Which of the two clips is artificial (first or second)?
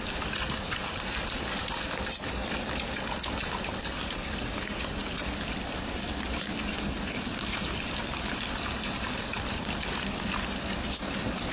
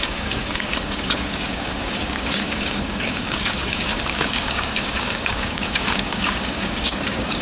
second